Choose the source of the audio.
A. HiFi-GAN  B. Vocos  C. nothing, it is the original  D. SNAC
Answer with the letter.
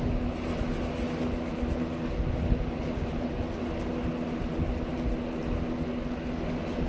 C